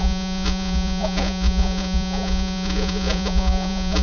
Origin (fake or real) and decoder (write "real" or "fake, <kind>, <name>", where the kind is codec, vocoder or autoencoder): fake, vocoder, Vocos